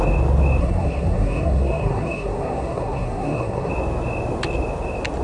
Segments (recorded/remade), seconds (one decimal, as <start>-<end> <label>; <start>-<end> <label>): 0.0-0.6 recorded; 0.6-3.7 remade; 3.7-5.2 recorded